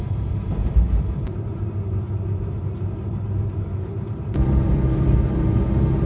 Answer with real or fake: fake